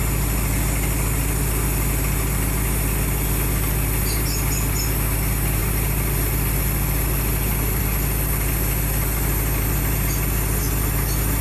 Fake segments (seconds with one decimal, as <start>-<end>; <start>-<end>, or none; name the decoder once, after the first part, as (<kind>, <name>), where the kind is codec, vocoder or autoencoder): 5.6-7.8 (vocoder, BigVGAN v2)